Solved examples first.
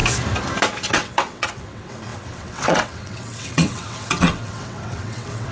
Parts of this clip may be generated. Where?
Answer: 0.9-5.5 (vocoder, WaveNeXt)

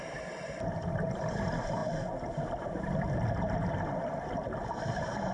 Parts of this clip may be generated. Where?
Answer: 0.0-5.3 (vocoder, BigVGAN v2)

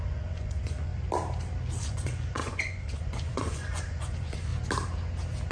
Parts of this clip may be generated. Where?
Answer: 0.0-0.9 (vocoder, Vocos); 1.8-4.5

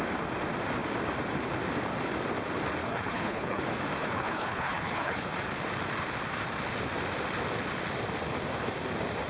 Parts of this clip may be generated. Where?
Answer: 2.8-3.6 (codec, HILCodec); 4.0-5.3